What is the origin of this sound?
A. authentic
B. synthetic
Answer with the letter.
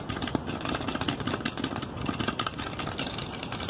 A